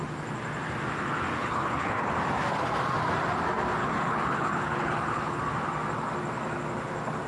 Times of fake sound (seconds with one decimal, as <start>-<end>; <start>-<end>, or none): 1.4-2.1; 3.8-5.4